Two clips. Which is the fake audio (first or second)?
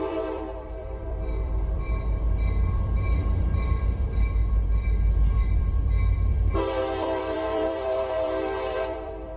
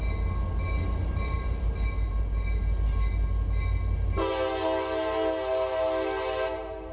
first